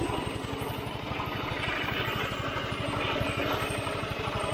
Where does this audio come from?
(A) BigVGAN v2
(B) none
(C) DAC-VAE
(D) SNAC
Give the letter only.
B